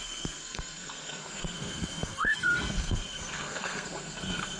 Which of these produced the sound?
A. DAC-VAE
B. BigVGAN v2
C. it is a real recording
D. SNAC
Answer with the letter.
D